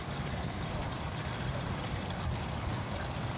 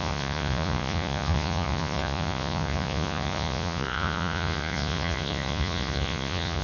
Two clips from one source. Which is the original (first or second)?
first